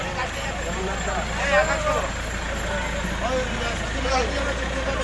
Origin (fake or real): real